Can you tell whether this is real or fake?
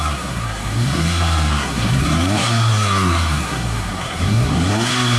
fake